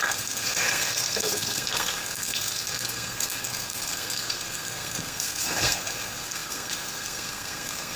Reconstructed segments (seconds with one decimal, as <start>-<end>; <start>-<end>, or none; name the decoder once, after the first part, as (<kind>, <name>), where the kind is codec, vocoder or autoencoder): 0.0-8.0 (codec, SNAC)